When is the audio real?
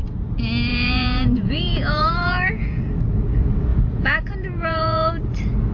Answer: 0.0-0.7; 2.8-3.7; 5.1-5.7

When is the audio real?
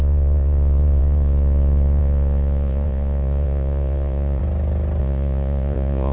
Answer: 4.4-5.0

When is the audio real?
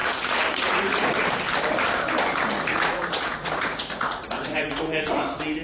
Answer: 1.2-2.7; 4.8-5.6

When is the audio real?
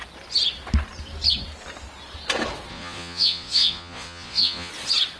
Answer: 0.0-2.7; 4.7-5.2